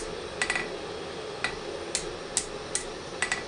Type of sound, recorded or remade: recorded